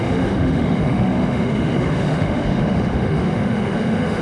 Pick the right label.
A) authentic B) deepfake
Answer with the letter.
B